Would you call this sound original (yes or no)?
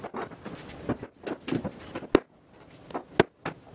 yes